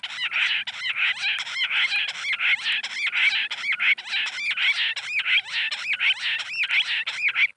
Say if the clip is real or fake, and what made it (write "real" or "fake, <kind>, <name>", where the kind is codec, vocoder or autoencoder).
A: real